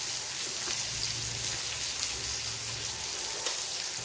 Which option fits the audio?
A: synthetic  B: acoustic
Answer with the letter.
B